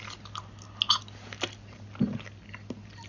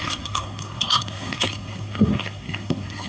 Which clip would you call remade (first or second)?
second